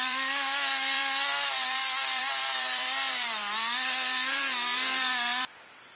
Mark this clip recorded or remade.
remade